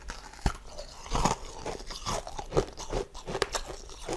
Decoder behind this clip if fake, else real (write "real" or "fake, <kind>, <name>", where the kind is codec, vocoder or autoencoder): real